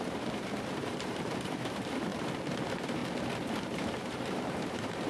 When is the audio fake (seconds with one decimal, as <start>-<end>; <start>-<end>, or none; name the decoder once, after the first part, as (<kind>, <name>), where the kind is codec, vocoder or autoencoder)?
0.0-2.1 (vocoder, BigVGAN v2); 2.6-3.0; 3.6-5.1